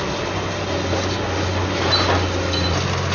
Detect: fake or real real